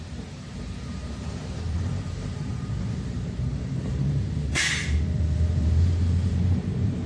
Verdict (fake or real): fake